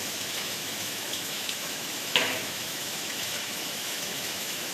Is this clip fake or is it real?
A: fake